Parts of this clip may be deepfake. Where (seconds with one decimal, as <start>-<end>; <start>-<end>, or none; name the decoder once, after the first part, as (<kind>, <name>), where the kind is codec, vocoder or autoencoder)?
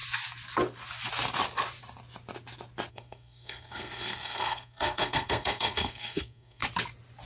2.9-6.6 (codec, SNAC)